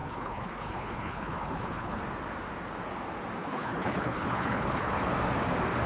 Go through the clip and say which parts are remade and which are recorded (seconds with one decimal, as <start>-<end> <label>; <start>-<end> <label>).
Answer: 0.0-2.0 remade; 2.0-3.4 recorded; 3.4-5.0 remade; 5.0-5.9 recorded